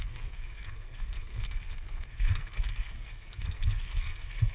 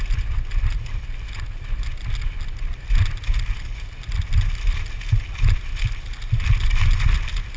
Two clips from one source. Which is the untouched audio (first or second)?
second